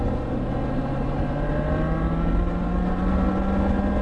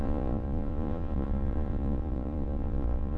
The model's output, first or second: second